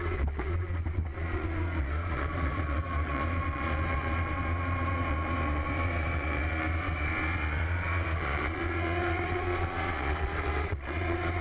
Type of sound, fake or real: fake